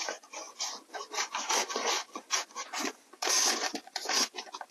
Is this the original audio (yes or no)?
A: no